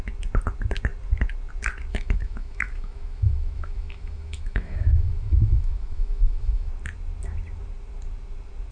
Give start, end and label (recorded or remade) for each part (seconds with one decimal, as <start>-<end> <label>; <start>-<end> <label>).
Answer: 0.0-1.9 recorded; 1.9-6.7 remade; 6.7-8.7 recorded